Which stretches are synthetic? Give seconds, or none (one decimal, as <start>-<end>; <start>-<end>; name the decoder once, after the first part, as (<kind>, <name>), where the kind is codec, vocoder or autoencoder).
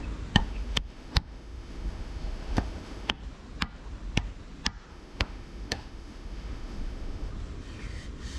0.4-3.2 (autoencoder, DAC-VAE); 4.9-7.3